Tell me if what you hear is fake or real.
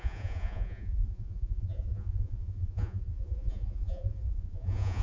fake